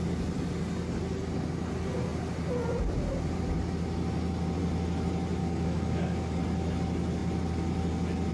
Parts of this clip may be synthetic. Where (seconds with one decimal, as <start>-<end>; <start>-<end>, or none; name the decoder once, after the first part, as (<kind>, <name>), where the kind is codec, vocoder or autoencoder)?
5.4-6.4 (codec, DAC)